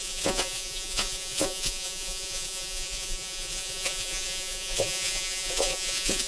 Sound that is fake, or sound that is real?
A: fake